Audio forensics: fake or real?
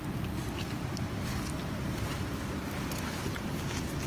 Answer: real